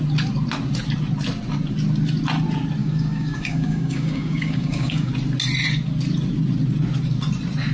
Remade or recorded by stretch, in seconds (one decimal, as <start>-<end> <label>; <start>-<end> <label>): 0.0-2.8 recorded; 2.8-5.1 remade; 5.1-7.7 recorded